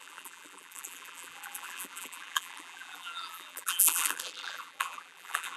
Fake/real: fake